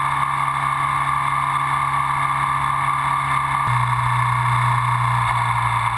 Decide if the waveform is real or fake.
real